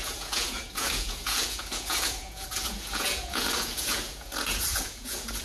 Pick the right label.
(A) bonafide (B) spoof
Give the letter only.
B